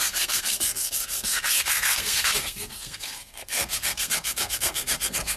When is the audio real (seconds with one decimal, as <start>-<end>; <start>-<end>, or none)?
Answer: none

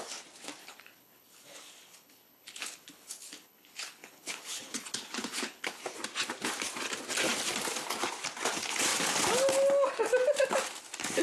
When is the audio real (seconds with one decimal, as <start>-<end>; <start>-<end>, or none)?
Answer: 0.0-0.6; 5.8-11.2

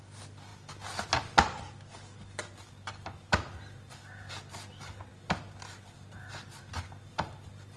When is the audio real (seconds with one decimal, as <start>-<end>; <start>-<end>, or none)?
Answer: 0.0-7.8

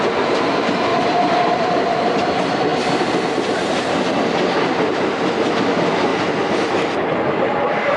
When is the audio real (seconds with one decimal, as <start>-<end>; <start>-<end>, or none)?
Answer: 0.0-0.9; 2.1-8.0

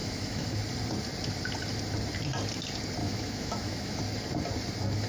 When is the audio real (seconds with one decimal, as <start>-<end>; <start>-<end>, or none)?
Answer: 0.6-3.0; 4.0-5.1